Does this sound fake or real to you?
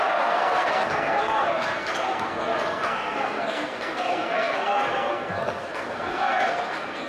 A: fake